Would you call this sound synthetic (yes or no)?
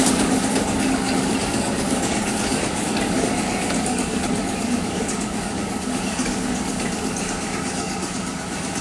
yes